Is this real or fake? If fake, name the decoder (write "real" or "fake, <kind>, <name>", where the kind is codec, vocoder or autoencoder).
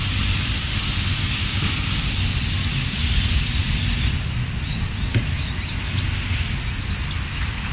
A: real